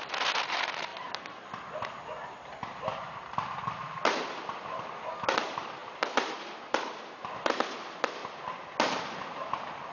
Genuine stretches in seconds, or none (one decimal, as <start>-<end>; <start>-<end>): 8.2-9.2